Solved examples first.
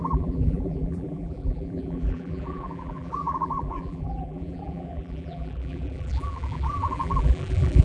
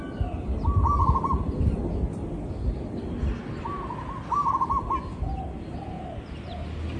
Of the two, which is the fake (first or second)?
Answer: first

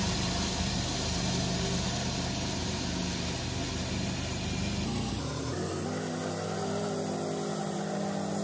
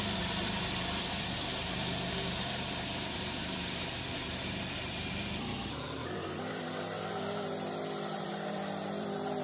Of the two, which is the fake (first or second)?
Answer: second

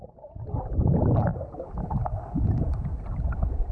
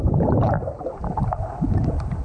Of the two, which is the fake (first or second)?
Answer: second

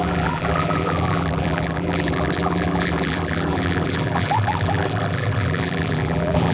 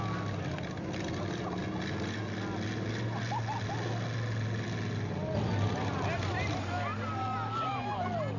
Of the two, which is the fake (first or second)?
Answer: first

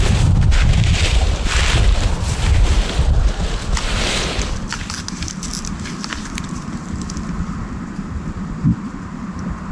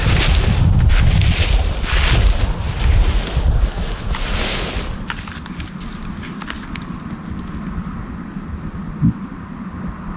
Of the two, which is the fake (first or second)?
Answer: first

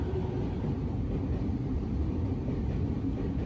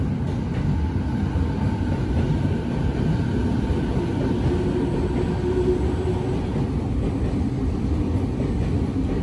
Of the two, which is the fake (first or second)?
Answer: first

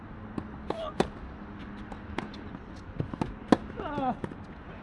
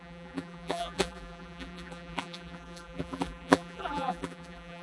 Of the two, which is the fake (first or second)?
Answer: second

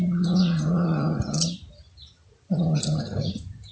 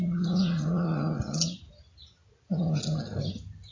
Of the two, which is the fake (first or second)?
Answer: first